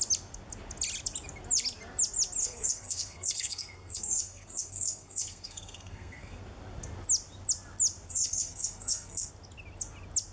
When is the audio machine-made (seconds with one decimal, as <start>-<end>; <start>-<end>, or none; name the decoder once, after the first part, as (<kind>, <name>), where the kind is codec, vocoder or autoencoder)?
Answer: 2.4-6.4 (codec, SNAC); 8.1-9.3